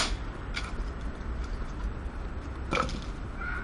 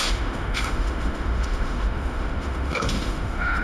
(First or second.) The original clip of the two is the first